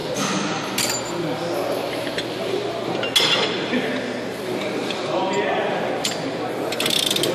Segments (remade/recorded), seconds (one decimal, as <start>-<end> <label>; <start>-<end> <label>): 0.0-7.3 recorded

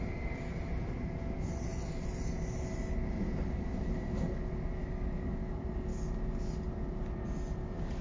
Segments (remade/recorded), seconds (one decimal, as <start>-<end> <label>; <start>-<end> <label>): 0.0-4.8 recorded; 4.8-5.5 remade; 5.5-8.0 recorded

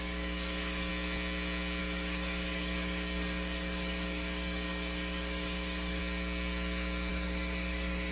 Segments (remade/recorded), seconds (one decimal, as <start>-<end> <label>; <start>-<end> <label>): 0.0-0.9 remade; 0.9-1.8 recorded; 1.8-6.0 remade; 6.0-7.1 recorded; 7.1-8.1 remade

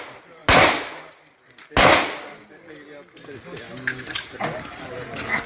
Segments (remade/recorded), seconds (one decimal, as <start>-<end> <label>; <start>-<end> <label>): 0.0-5.5 recorded

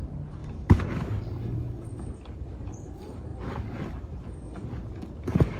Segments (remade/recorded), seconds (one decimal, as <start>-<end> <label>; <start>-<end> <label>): 0.0-5.6 remade

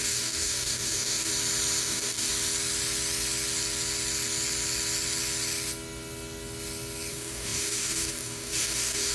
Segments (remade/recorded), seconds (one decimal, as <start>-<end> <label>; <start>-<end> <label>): 0.0-1.3 remade; 1.3-1.8 recorded; 1.8-2.3 remade; 2.3-7.1 recorded; 7.1-9.1 remade

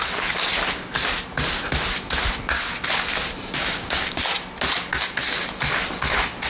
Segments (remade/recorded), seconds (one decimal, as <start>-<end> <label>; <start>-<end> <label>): 0.0-3.6 recorded; 3.6-4.2 remade; 4.2-6.5 recorded